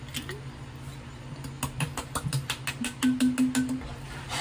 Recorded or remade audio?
recorded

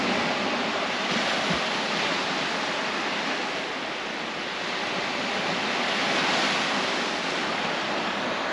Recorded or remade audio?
recorded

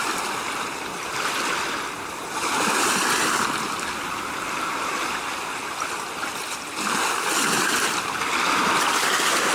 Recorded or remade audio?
remade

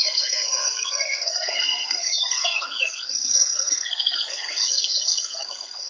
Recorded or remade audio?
remade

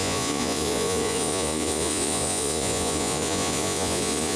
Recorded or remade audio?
remade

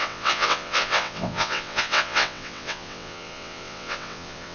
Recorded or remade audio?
remade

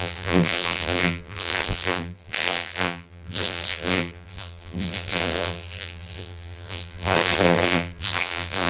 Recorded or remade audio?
remade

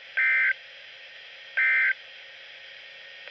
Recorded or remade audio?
recorded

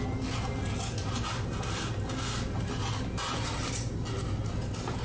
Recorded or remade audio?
recorded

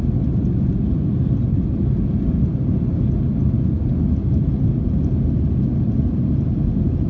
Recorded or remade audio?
recorded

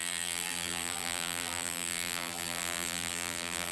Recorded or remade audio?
remade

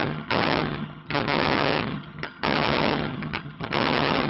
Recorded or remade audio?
remade